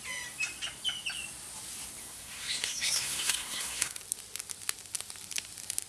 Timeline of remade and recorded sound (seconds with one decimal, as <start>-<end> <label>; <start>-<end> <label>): 0.0-2.0 recorded; 2.0-4.0 remade; 4.0-5.9 recorded